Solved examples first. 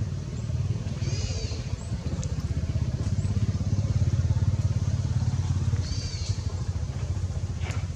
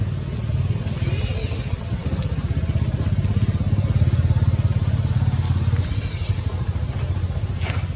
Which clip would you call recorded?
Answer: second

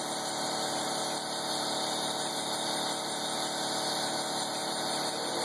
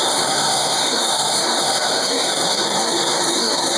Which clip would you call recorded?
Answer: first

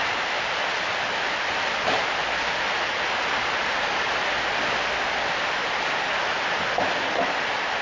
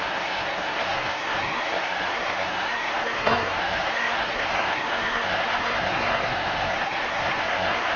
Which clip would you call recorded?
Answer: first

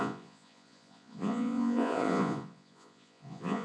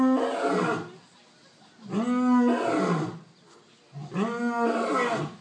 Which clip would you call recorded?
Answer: second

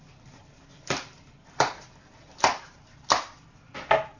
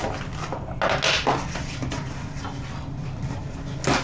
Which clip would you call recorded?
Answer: second